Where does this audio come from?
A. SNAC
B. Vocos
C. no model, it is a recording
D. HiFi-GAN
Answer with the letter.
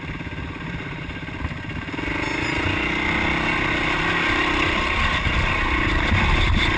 C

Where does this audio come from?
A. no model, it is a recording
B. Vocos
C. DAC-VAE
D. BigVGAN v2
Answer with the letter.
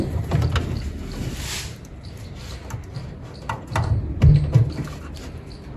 A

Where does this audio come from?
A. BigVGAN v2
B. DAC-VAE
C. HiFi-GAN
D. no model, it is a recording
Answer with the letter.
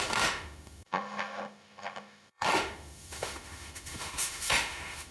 B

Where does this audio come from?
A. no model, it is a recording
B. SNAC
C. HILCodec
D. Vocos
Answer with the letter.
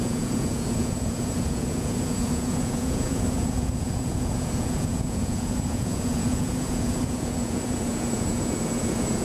D